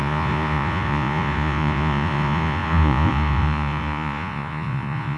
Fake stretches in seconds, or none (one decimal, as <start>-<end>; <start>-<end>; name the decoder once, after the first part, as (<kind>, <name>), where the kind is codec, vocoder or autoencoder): 0.0-5.2 (vocoder, Vocos)